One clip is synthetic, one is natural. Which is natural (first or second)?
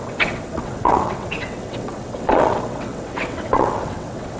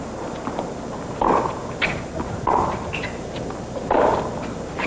second